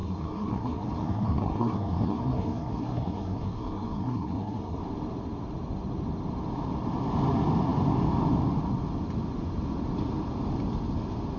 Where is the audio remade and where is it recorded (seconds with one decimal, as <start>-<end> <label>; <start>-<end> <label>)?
0.0-4.8 remade; 4.8-11.4 recorded